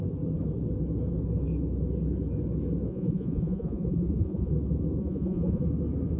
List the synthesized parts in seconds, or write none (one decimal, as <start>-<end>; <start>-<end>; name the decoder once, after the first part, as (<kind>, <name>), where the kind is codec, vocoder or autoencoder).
2.9-4.5 (vocoder, Vocos); 5.0-5.6